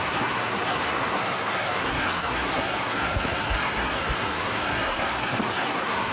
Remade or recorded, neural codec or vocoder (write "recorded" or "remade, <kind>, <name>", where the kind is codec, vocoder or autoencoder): remade, codec, SNAC